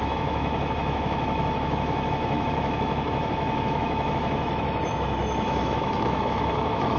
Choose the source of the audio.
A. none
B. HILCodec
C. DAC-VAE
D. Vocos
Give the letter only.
C